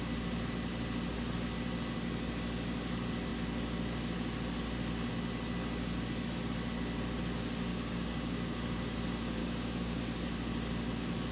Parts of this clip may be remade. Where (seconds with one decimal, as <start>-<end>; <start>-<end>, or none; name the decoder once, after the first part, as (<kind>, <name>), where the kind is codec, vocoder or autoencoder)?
7.7-8.8 (codec, DAC); 9.4-10.0